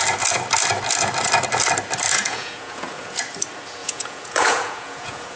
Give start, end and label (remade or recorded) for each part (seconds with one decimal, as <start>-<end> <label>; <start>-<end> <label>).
0.0-2.1 recorded; 2.1-3.2 remade; 3.2-3.8 recorded; 3.8-5.4 remade